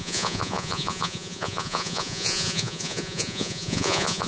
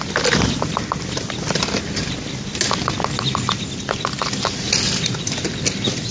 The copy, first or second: first